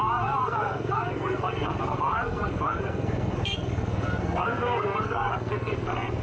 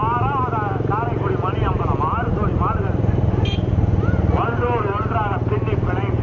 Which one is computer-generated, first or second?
first